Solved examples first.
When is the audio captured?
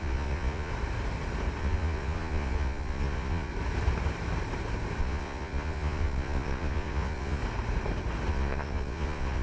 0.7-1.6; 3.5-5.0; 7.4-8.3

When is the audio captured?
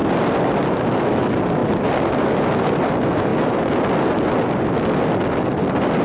0.0-6.0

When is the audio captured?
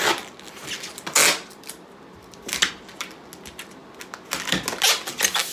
0.0-5.5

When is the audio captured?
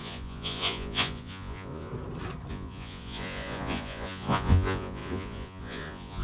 1.9-2.5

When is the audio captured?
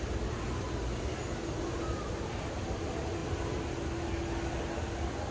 0.0-5.3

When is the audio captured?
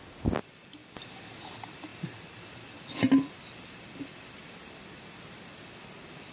0.0-6.3